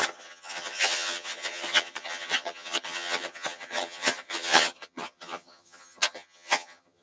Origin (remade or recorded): remade